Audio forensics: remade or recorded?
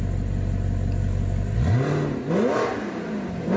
recorded